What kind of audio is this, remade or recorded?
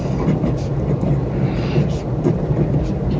recorded